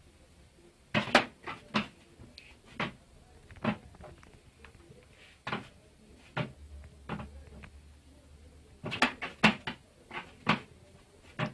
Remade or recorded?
recorded